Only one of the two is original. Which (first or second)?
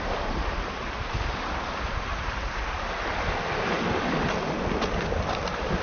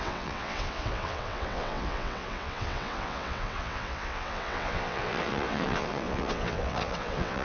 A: first